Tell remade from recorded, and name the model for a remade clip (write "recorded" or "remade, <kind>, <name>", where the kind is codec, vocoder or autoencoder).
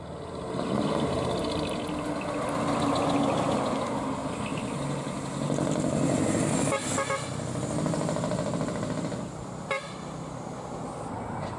recorded